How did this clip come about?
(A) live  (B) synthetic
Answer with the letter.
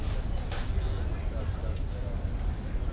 A